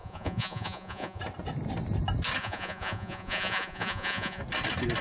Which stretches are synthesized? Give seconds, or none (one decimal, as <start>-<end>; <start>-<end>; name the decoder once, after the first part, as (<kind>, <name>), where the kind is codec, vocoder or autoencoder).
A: 0.0-1.2 (vocoder, Vocos); 2.4-4.4